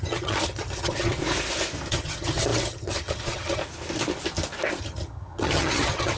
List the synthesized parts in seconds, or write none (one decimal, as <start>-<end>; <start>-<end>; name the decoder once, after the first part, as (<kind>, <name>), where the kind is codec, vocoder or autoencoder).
0.0-1.2 (vocoder, HiFi-GAN); 1.9-3.6; 4.8-6.2